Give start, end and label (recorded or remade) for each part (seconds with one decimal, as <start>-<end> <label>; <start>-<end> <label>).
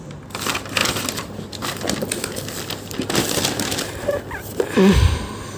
0.0-5.6 recorded